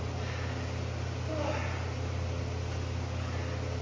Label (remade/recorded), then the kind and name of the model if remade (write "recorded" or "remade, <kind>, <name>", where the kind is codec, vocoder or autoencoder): recorded